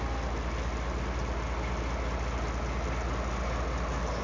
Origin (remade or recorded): recorded